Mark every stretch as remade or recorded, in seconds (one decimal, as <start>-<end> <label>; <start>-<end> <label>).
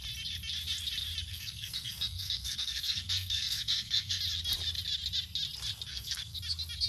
0.0-1.3 recorded; 1.3-4.2 remade; 4.2-5.9 recorded; 5.9-6.4 remade; 6.4-6.9 recorded